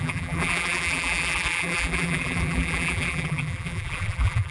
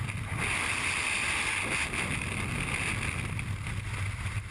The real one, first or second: second